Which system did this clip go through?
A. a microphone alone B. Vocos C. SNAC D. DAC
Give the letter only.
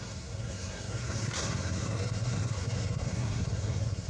C